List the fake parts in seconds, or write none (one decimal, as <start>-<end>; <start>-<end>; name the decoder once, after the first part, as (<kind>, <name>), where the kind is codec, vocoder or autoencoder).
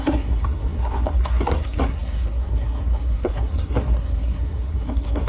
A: 0.0-5.3 (codec, SNAC)